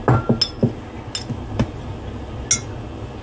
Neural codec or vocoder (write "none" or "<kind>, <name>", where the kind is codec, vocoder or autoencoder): none